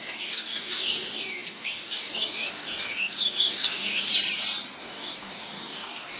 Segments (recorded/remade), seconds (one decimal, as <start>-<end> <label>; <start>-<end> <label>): 0.0-4.1 remade; 4.1-4.8 recorded; 4.8-6.2 remade